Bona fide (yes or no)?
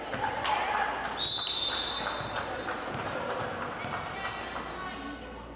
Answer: yes